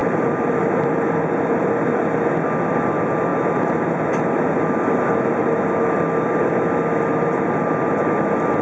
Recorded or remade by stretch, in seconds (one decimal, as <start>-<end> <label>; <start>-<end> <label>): 0.0-0.9 remade; 0.9-8.6 recorded